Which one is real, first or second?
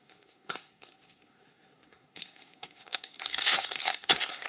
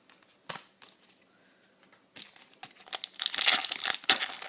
second